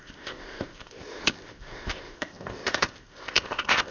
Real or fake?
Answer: fake